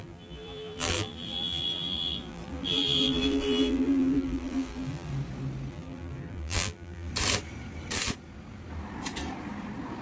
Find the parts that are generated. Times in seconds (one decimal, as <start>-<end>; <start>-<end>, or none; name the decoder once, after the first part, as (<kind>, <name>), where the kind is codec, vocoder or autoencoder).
0.0-5.1 (vocoder, BigVGAN v2); 5.7-7.1